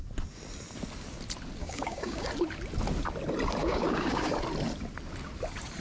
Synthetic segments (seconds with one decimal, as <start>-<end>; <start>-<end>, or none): 1.6-2.3; 3.6-4.3